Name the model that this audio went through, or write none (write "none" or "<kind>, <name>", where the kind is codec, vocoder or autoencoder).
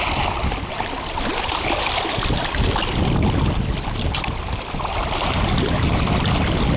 none